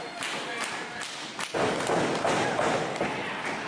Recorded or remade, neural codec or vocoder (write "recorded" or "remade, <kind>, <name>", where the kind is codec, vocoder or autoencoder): recorded